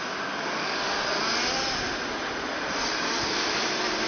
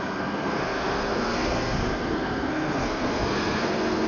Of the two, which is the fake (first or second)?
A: second